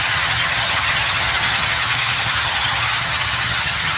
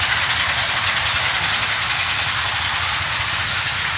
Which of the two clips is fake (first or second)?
first